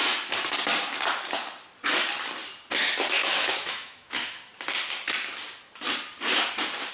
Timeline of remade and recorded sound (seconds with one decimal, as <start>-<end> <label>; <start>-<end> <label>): 0.0-3.1 recorded; 3.1-4.5 remade; 4.5-6.9 recorded